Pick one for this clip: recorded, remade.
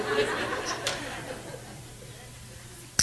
recorded